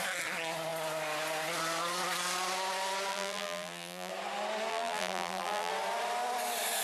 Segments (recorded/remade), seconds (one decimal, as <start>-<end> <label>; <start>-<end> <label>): 0.0-3.1 recorded; 3.1-4.1 remade; 4.1-4.7 recorded; 4.7-5.7 remade; 5.7-6.8 recorded